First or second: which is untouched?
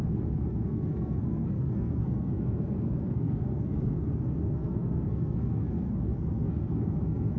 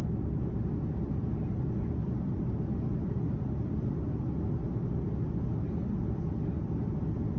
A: second